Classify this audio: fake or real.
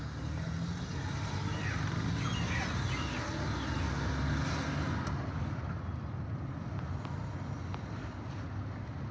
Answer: real